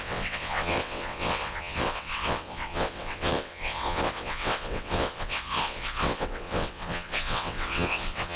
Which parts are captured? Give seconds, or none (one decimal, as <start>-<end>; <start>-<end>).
none